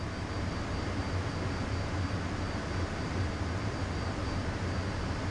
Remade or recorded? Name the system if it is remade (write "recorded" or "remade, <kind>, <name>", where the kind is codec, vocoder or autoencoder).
recorded